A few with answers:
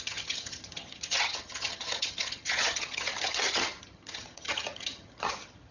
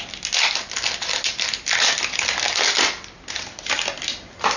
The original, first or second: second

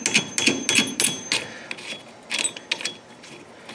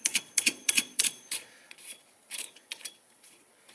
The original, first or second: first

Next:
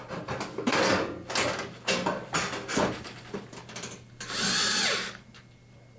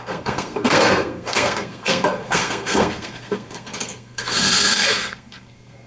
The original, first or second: first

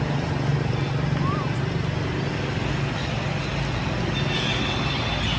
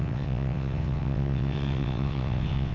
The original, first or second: first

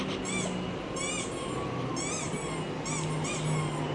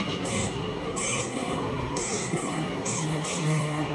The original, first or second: first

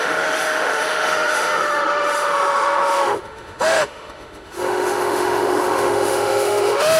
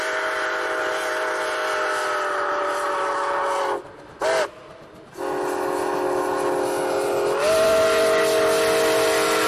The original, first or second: second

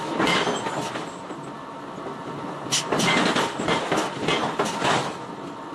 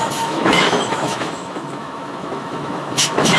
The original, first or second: first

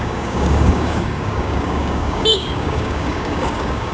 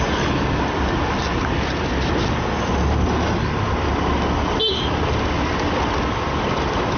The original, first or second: second